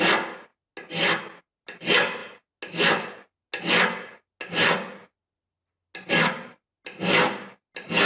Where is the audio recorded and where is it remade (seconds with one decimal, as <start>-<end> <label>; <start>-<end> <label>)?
0.0-8.1 recorded